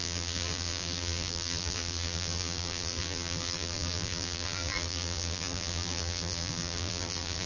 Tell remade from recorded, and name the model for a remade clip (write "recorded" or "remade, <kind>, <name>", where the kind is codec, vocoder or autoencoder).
remade, vocoder, BigVGAN v2